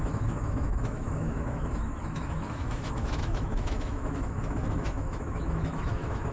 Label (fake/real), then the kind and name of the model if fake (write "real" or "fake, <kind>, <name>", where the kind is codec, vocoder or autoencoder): fake, autoencoder, DAC-VAE